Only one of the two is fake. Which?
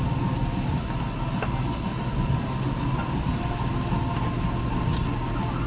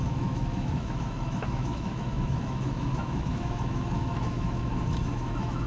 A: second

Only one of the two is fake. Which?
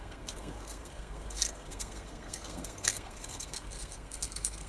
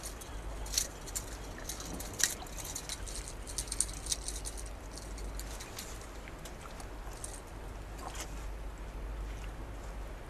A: first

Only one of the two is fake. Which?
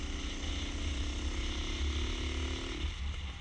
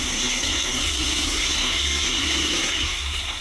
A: second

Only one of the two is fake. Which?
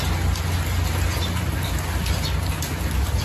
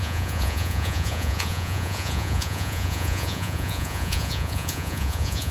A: second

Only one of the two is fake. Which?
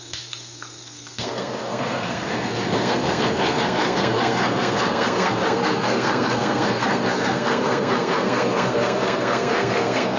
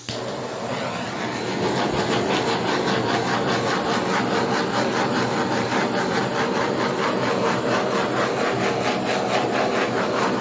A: first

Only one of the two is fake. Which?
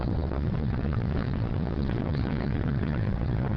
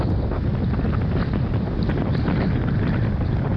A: first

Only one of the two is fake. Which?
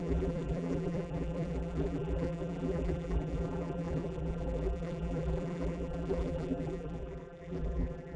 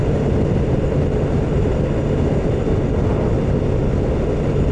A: first